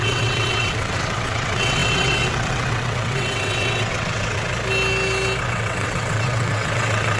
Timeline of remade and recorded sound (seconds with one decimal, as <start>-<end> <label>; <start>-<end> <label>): 0.0-4.5 remade; 4.5-5.4 recorded; 5.4-7.2 remade